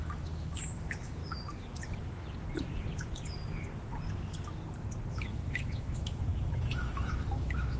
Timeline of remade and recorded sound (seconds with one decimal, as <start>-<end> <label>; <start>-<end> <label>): 0.0-1.2 remade; 1.2-5.1 recorded; 5.1-7.8 remade